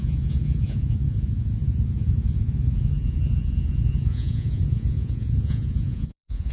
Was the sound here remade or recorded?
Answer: remade